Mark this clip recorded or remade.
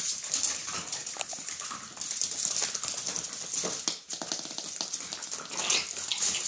recorded